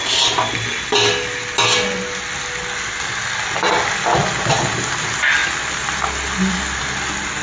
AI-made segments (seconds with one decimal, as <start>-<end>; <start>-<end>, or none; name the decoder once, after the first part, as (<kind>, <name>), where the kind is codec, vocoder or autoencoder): none